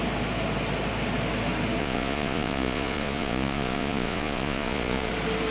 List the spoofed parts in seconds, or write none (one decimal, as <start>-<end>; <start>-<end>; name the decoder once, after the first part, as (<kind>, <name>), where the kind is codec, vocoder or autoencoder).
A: 1.8-5.1 (vocoder, Vocos)